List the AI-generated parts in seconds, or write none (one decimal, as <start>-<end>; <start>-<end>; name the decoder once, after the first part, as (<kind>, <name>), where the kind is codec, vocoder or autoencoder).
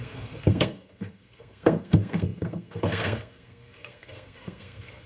0.0-5.1 (codec, SNAC)